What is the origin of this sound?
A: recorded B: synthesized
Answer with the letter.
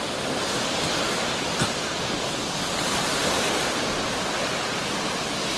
A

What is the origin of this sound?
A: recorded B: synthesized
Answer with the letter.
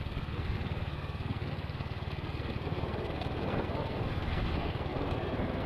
B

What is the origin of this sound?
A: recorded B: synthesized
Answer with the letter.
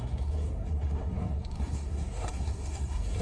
B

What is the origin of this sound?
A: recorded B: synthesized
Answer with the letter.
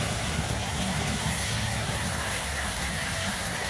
B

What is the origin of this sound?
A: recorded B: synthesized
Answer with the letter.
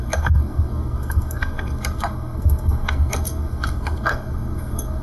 B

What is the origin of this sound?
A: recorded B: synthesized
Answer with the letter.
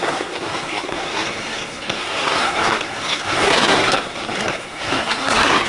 B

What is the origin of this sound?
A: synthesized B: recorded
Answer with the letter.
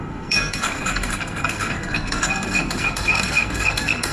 A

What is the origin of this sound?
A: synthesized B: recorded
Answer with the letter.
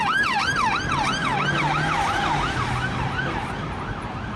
B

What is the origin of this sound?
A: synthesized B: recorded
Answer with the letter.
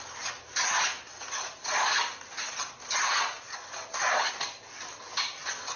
B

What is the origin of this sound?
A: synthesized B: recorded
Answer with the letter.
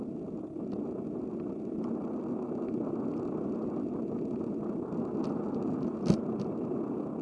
B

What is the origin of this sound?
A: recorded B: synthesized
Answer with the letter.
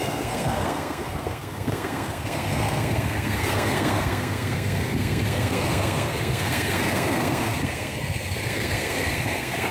B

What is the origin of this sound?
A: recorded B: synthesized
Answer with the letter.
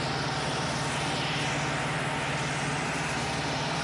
A